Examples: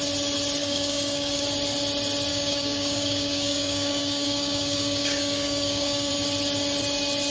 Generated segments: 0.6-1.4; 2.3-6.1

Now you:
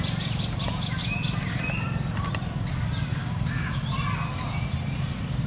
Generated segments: 3.1-3.8

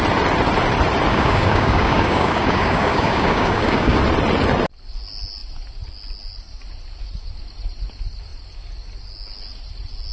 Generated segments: 1.1-4.0

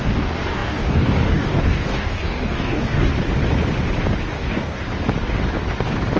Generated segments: 0.0-3.1; 4.3-4.8

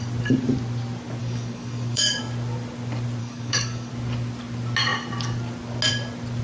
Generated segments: 1.2-2.2; 3.2-3.9

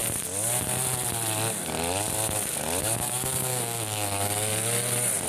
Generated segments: 2.8-4.5

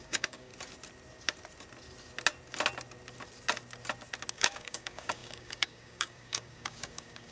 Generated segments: 0.0-0.5; 4.3-7.3

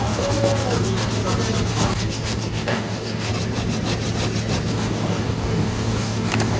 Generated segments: 0.0-1.2; 1.7-3.3; 4.7-6.6